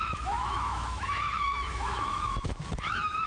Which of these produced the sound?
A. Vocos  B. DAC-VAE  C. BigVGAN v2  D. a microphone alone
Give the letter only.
B